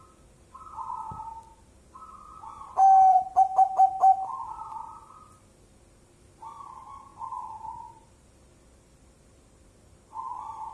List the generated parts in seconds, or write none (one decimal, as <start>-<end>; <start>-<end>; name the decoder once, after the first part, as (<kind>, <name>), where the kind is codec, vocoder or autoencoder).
none